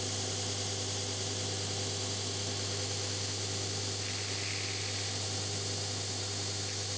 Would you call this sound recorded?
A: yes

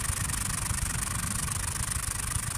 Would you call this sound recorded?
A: yes